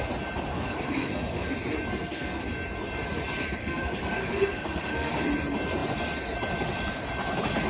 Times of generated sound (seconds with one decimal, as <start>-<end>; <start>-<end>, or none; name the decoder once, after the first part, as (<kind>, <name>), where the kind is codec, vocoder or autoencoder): 0.5-1.5 (codec, SNAC); 1.9-2.4; 3.6-5.1